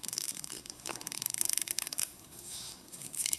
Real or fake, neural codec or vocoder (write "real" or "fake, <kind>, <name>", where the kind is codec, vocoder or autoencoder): fake, codec, SNAC